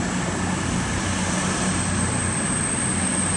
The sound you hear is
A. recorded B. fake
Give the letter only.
A